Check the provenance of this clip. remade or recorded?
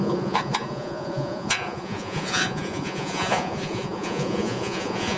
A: remade